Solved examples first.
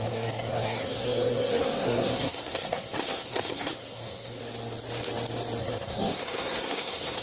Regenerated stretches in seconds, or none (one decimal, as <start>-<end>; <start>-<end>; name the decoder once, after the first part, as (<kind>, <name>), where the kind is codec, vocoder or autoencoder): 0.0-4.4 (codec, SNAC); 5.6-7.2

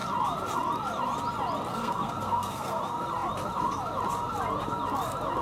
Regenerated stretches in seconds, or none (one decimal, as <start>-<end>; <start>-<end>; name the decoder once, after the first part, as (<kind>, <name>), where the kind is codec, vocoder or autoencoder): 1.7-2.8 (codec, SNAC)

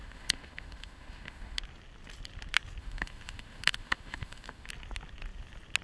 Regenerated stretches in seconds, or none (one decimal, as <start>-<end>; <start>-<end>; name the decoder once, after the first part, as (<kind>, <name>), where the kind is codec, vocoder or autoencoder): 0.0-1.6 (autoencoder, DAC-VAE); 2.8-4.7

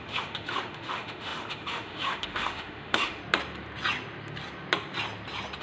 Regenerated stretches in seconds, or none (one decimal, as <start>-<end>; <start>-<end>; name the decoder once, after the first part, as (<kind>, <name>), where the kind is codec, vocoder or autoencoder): 0.0-3.2 (autoencoder, DAC-VAE)

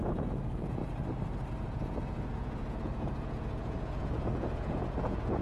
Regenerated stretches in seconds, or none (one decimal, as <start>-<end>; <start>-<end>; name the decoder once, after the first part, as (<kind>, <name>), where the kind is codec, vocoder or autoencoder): 0.0-0.8 (vocoder, Vocos); 1.5-5.4

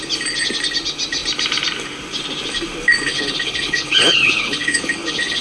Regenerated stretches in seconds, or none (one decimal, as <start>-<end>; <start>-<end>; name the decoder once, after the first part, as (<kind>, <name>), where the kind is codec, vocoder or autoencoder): 3.1-5.4 (codec, HILCodec)

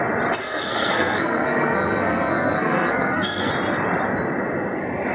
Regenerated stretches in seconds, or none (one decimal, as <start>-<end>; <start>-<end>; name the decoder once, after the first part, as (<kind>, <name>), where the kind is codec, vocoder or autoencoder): 0.4-3.5 (codec, SNAC)

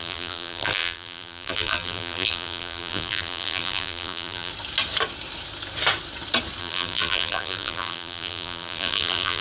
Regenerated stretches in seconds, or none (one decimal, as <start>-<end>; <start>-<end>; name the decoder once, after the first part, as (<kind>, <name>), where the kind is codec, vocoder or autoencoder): 0.0-4.5 (vocoder, BigVGAN v2); 6.6-9.4